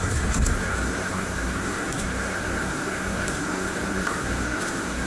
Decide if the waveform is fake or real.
fake